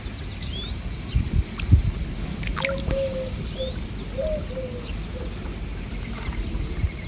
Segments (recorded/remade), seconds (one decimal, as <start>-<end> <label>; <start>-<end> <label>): 0.0-5.4 recorded; 5.4-5.9 remade; 5.9-7.1 recorded